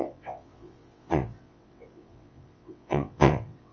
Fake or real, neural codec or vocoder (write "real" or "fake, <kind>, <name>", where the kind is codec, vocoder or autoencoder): fake, vocoder, WaveNeXt